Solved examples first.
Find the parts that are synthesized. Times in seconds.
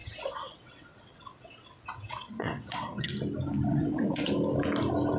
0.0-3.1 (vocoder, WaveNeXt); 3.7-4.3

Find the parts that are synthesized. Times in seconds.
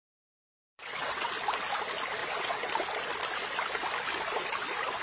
0.6-1.3 (vocoder, WaveNeXt); 2.2-2.7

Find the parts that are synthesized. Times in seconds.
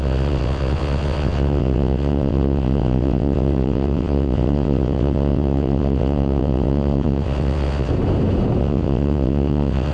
0.0-7.9 (vocoder, WaveNeXt); 8.6-9.9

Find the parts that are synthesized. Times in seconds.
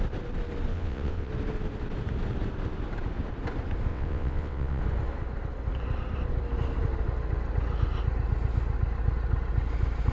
0.7-1.3 (vocoder, WaveNeXt); 3.9-4.8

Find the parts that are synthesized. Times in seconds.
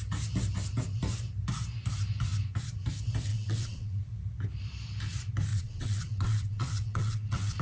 3.3-4.0 (vocoder, WaveNeXt); 5.5-7.6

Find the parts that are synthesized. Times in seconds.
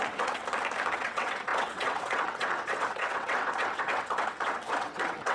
0.0-0.4 (vocoder, WaveNeXt); 0.9-5.3